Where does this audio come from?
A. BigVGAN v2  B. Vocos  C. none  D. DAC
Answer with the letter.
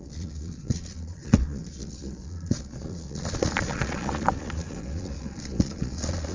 B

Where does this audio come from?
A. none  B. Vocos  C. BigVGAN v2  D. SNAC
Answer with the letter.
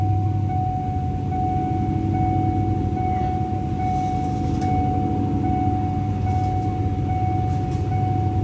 A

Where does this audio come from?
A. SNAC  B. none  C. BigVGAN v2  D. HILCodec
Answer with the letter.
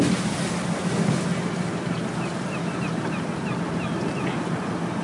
B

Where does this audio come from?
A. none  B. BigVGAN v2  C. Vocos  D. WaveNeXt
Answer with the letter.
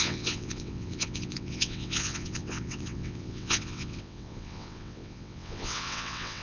D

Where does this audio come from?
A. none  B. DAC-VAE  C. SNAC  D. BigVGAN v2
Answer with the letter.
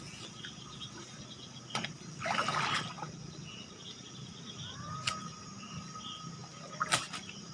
A